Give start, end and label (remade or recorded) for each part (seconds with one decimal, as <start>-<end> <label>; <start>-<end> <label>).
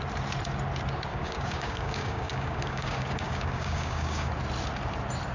0.0-1.1 recorded; 1.1-4.3 remade; 4.3-5.3 recorded